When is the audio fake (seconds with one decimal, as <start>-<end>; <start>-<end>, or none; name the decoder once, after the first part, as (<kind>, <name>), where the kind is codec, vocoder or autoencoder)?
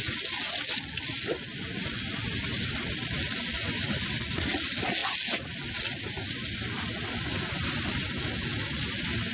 none